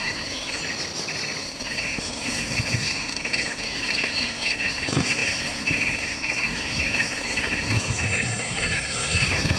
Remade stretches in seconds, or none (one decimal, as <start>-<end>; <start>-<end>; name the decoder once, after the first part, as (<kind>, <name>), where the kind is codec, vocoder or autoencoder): 0.0-0.6 (codec, SNAC); 1.4-9.6